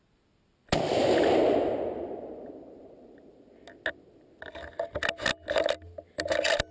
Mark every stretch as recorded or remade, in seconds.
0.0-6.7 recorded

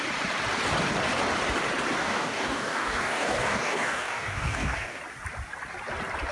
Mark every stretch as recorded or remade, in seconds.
0.0-2.0 recorded; 2.0-5.0 remade; 5.0-6.3 recorded

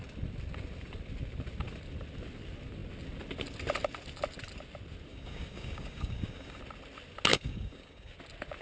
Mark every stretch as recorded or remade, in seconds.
0.0-5.1 recorded; 5.1-6.6 remade; 6.6-7.3 recorded; 7.3-8.1 remade; 8.1-8.6 recorded

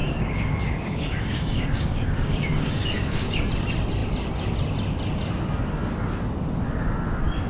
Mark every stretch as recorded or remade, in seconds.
0.0-3.4 remade; 3.4-7.5 recorded

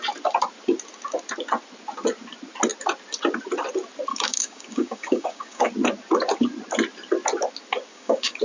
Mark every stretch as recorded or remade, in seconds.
0.0-4.1 recorded; 4.1-5.7 remade; 5.7-7.9 recorded; 7.9-8.4 remade

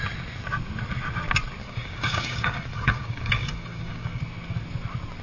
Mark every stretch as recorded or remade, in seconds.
0.0-1.6 recorded; 1.6-4.2 remade; 4.2-5.2 recorded

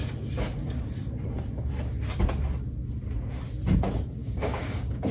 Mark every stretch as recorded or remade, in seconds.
0.0-4.2 recorded; 4.2-5.1 remade